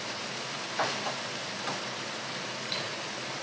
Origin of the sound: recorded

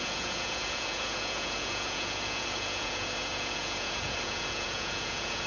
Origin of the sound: remade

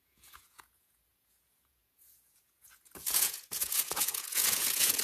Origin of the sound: remade